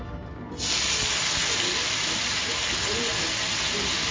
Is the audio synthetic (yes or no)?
no